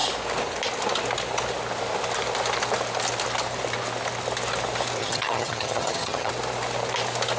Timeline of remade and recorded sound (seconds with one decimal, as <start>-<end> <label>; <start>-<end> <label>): 0.0-5.0 recorded; 5.0-6.3 remade; 6.3-7.4 recorded